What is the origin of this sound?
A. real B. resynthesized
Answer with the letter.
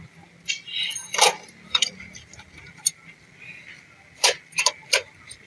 A